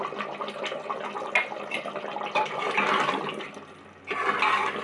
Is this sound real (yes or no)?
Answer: yes